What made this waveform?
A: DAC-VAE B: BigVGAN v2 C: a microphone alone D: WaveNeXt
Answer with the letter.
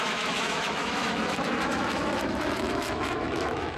A